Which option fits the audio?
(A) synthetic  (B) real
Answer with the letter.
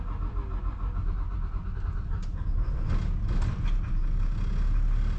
B